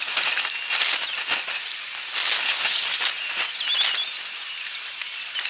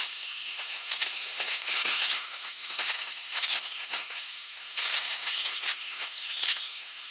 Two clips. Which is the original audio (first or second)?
first